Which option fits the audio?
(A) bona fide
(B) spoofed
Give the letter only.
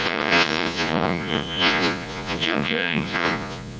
B